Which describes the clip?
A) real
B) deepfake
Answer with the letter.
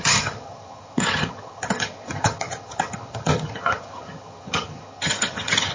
B